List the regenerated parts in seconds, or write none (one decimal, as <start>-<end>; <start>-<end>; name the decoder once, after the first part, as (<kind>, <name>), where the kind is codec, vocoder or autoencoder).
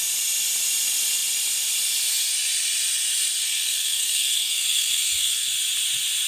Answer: 3.4-5.5 (codec, SNAC)